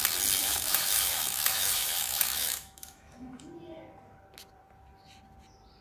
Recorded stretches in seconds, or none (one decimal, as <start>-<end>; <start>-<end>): 0.0-0.4; 3.5-5.8